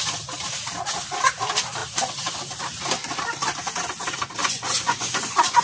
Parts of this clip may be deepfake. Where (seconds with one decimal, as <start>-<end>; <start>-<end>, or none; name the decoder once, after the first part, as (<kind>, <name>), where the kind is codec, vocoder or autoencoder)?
4.4-5.6 (vocoder, Vocos)